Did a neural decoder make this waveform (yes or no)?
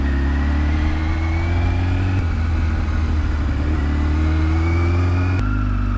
no